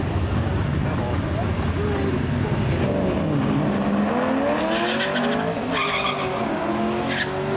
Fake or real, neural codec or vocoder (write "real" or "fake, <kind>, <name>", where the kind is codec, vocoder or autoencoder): real